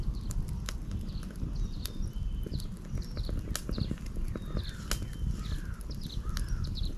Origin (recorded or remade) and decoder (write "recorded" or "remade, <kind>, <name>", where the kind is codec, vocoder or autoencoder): recorded